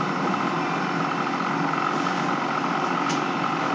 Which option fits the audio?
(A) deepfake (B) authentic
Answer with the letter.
B